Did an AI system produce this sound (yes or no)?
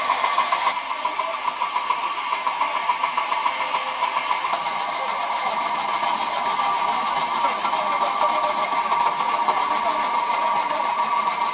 no